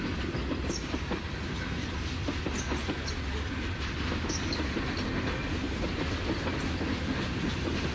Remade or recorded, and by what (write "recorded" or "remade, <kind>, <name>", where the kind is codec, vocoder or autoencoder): recorded